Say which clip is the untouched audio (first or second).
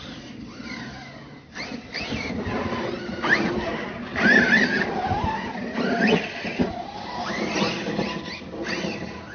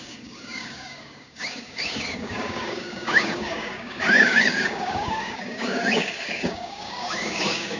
first